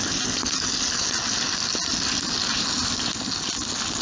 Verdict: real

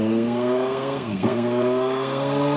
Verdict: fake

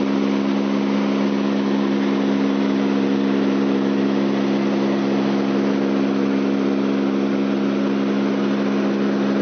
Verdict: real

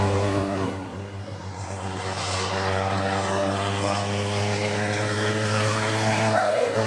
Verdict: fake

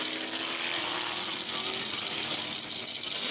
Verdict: real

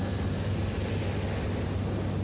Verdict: real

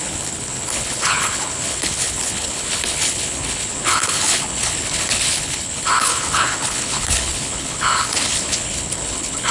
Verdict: fake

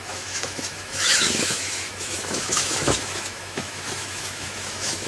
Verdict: fake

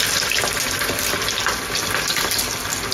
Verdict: real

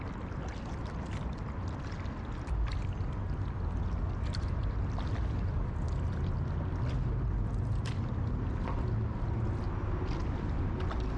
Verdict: real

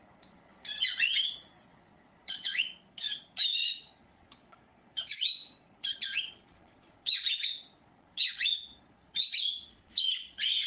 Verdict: fake